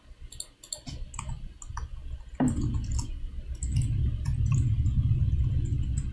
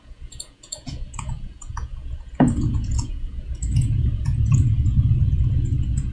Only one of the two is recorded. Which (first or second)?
first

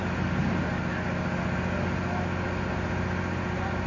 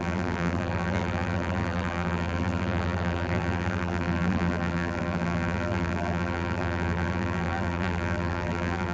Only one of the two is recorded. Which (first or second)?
first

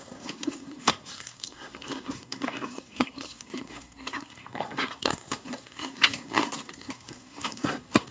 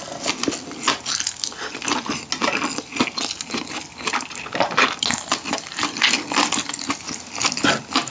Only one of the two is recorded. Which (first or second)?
second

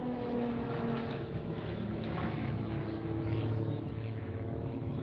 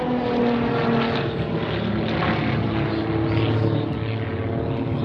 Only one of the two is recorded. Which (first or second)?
second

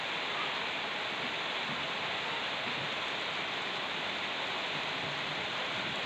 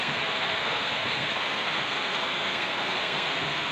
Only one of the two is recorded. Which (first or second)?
first